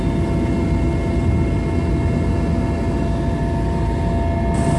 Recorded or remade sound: recorded